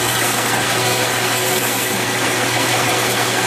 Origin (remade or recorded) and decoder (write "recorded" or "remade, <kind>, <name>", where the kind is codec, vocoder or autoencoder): remade, codec, SNAC